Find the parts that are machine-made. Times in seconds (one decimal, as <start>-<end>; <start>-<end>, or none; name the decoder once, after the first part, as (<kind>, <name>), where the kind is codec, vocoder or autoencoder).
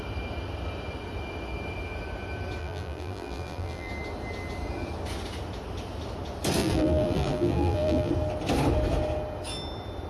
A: 2.6-3.9 (vocoder, BigVGAN v2); 6.6-8.1